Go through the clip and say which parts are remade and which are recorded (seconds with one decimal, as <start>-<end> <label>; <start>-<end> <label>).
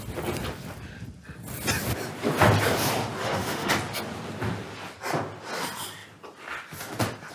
0.0-3.2 recorded; 3.2-3.7 remade; 3.7-7.3 recorded